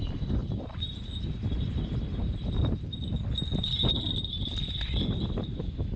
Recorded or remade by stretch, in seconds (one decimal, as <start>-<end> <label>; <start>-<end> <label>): 0.0-0.4 recorded; 0.4-1.5 remade; 1.5-2.1 recorded; 2.1-3.0 remade; 3.0-6.0 recorded

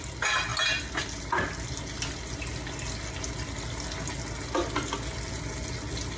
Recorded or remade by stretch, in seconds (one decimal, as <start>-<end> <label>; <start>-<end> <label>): 0.0-6.2 recorded

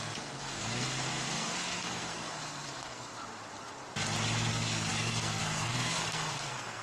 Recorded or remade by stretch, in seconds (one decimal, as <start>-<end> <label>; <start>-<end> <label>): 0.0-3.1 remade; 3.1-4.5 recorded; 4.5-6.8 remade

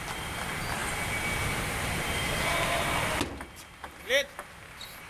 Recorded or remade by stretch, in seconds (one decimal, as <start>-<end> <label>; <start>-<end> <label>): 0.0-5.1 recorded

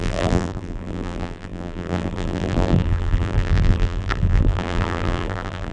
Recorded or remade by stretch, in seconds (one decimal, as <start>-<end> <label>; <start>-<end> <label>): 0.0-5.7 remade